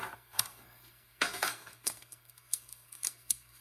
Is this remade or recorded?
remade